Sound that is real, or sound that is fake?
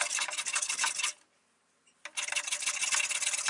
real